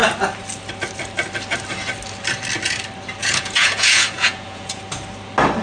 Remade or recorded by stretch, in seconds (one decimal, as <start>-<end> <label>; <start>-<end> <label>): 0.0-3.2 recorded; 3.2-4.8 remade; 4.8-5.6 recorded